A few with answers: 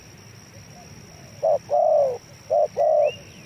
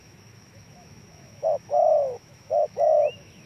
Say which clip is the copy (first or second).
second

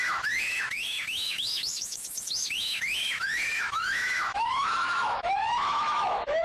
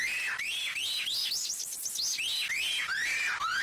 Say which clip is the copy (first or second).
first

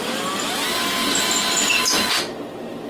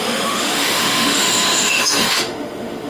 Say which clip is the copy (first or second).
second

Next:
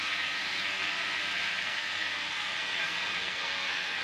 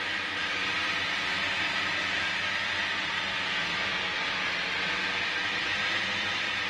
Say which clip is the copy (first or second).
first